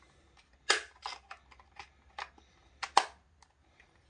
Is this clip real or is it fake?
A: real